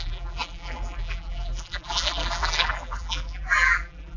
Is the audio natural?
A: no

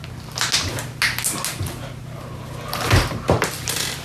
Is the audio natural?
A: yes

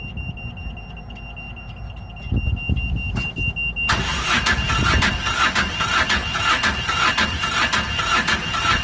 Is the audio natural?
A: yes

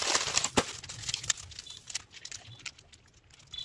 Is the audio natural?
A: yes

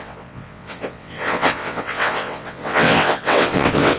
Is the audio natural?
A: no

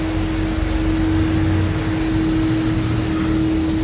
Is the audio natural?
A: yes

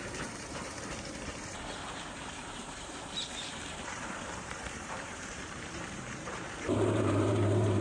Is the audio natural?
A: no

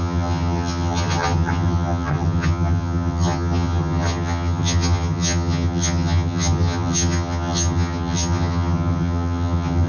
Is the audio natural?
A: no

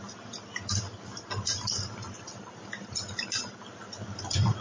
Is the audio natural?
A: yes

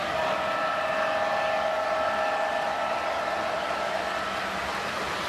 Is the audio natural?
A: yes